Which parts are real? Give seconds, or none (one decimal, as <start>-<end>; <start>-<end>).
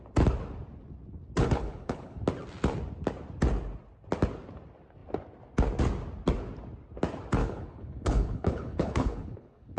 0.0-1.4; 2.2-7.4